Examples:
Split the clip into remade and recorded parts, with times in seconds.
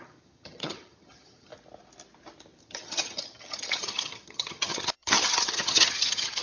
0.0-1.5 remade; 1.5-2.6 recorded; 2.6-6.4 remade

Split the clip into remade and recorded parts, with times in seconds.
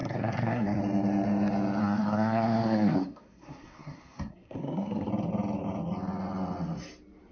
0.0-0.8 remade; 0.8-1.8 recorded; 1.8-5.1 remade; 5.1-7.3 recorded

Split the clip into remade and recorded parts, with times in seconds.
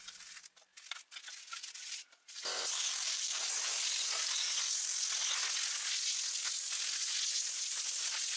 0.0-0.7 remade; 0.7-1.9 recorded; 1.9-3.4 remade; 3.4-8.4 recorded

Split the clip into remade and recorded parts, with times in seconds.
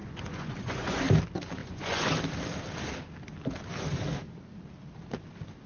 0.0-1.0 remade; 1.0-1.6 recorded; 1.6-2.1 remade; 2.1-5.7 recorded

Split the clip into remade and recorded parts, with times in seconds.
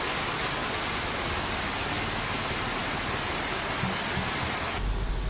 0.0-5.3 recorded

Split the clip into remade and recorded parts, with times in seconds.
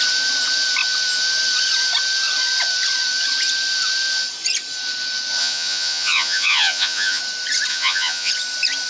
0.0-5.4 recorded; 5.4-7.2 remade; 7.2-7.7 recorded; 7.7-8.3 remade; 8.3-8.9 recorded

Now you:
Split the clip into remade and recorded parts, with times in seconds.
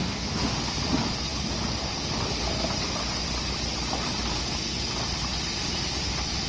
0.0-0.6 remade; 0.6-6.5 recorded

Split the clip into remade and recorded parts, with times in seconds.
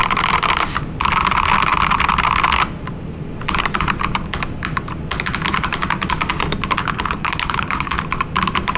0.0-6.8 recorded; 6.8-8.0 remade; 8.0-8.8 recorded